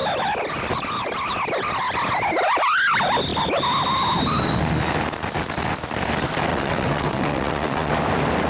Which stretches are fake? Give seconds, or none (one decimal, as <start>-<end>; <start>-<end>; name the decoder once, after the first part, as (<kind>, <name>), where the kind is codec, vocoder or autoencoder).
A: 6.5-7.9 (vocoder, WaveNeXt)